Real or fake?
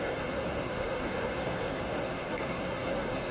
fake